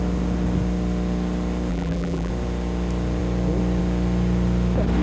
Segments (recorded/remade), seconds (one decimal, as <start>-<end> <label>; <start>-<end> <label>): 0.0-1.7 recorded; 1.7-2.3 remade; 2.3-5.0 recorded